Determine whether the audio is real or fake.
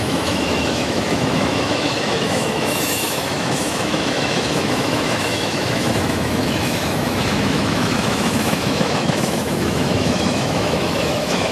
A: fake